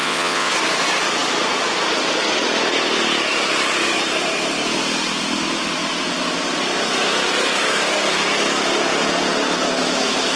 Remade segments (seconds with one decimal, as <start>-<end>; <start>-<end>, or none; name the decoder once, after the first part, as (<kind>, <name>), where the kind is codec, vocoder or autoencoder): 0.0-0.5 (vocoder, WaveNeXt)